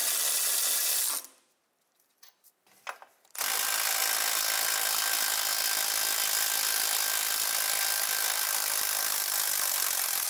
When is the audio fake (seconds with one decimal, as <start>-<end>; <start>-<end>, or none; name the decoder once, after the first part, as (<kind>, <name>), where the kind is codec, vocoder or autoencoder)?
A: none